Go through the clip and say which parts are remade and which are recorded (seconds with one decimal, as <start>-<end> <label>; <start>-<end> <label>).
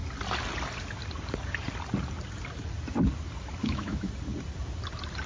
0.0-3.6 recorded; 3.6-4.1 remade; 4.1-5.3 recorded